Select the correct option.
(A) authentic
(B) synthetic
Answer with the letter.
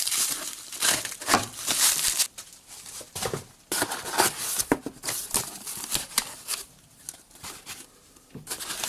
B